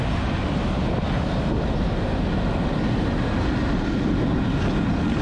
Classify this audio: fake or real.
real